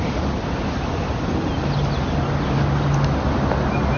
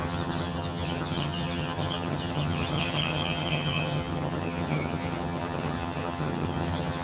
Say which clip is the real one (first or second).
first